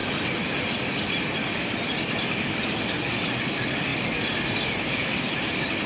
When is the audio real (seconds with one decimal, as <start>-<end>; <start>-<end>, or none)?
0.0-5.9